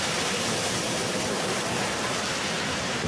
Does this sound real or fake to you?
real